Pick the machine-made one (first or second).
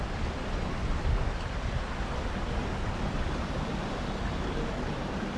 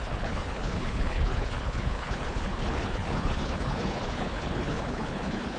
second